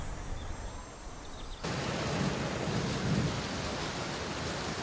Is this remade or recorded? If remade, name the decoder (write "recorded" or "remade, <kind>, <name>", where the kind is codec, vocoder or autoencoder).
recorded